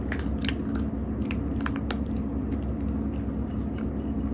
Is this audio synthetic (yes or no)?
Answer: no